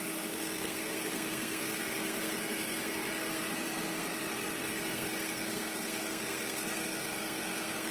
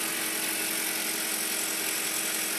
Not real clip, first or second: first